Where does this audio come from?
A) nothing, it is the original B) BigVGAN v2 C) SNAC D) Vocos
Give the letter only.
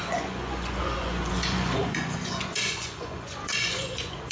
D